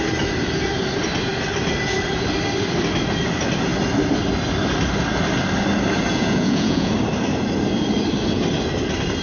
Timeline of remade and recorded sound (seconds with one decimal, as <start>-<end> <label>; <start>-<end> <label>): 0.0-6.1 recorded; 6.1-6.9 remade; 6.9-9.2 recorded